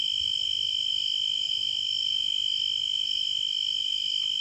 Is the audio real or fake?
real